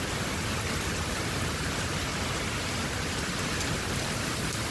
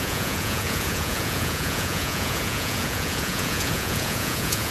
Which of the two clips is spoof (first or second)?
second